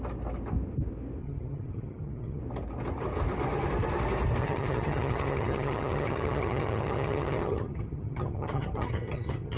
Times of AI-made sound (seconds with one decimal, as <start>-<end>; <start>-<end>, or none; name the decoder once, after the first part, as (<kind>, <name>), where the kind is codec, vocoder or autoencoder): 1.2-2.4 (vocoder, HiFi-GAN); 4.4-9.6

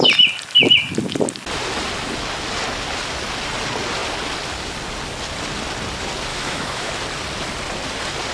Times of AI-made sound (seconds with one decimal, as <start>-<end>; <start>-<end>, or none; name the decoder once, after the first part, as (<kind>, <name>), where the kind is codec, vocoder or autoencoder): 6.3-6.9 (autoencoder, DAC-VAE)

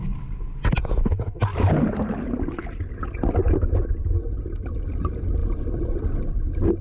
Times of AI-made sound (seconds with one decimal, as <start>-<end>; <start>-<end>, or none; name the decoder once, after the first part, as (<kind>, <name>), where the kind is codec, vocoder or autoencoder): none

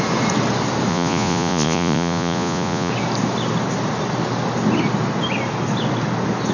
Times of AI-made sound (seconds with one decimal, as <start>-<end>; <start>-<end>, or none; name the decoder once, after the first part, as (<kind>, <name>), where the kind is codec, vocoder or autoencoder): 0.9-2.9 (vocoder, Vocos)

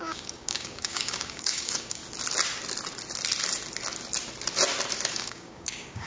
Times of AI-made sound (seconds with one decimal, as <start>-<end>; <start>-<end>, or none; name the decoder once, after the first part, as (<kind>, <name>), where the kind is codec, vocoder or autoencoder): 0.0-2.0 (codec, DAC); 5.1-6.1

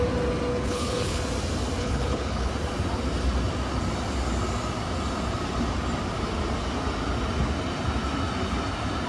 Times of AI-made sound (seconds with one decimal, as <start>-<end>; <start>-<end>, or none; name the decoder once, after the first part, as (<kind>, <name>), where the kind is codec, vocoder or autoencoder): 0.5-1.2 (codec, HILCodec); 1.8-2.5

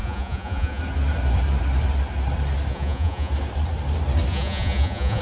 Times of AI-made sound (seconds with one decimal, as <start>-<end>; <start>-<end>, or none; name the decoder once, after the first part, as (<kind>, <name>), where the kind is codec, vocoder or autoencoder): 0.0-0.8 (vocoder, Vocos); 2.7-3.3; 4.3-5.2